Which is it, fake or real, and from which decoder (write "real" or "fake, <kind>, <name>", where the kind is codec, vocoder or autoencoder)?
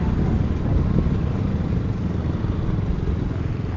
real